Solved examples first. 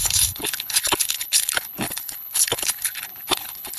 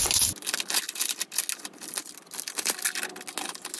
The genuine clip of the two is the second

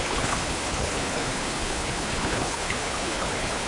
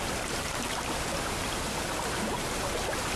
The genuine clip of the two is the second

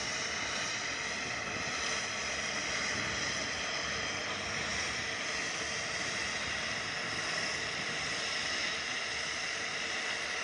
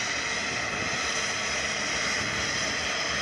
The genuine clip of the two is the second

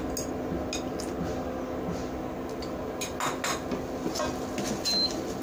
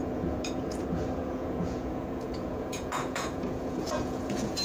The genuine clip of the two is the first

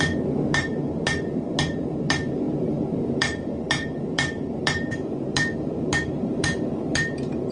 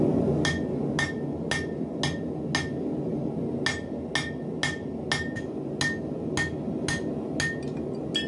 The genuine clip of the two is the second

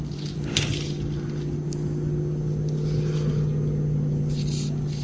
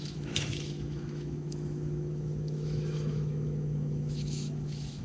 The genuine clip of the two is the first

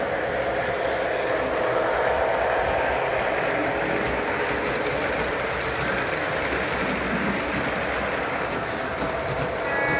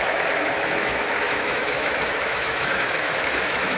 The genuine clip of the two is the first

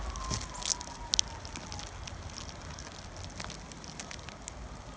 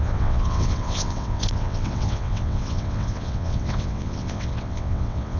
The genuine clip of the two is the first